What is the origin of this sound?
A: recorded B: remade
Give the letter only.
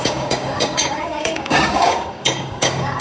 B